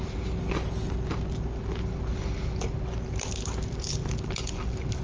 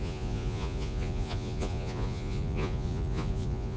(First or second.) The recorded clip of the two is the first